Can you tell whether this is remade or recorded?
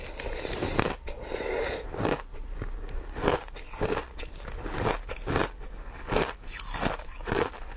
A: recorded